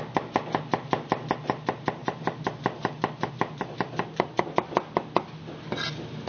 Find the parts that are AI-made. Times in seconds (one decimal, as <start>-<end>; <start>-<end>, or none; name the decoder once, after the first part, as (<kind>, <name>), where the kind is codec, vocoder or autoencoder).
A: none